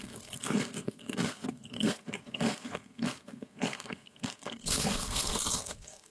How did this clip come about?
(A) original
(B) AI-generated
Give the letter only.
B